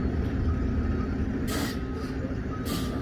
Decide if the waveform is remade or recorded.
recorded